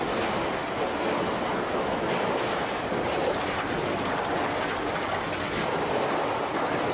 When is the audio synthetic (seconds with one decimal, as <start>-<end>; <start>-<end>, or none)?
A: 3.1-5.1